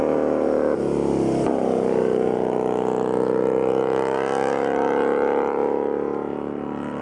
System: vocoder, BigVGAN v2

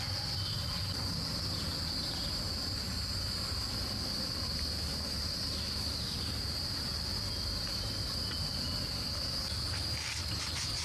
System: none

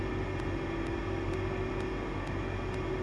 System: none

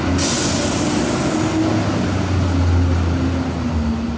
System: none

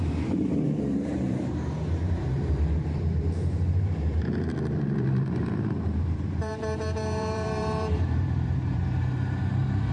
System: vocoder, BigVGAN v2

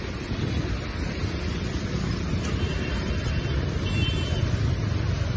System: none